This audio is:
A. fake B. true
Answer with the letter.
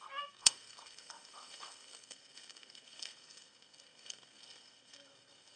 A